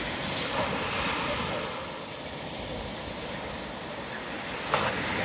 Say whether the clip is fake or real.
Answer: real